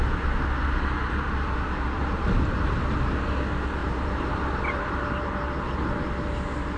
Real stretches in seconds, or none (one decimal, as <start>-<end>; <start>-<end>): 0.0-1.0; 2.8-3.8; 5.5-6.8